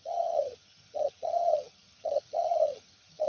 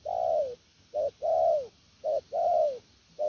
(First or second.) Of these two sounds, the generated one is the first